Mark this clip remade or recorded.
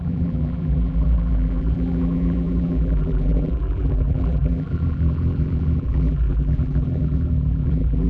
remade